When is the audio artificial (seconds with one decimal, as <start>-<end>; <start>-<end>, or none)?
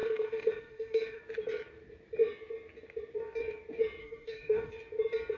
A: 0.0-1.2; 4.0-4.7